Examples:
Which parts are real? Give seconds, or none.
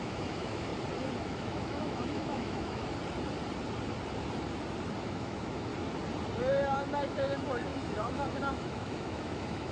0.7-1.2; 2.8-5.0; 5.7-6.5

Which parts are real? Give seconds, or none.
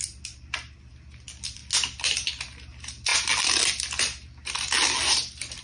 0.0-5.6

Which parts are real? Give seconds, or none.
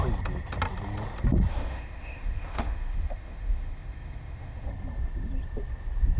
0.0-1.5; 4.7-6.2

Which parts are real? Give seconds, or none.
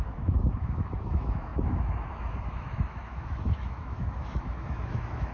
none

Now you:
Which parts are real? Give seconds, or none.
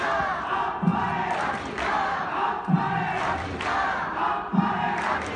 0.0-5.4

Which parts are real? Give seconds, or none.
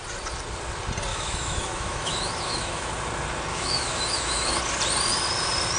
0.0-1.1; 2.9-3.5; 4.6-5.8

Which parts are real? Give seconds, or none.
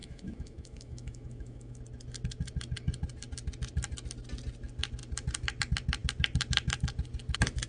1.8-7.7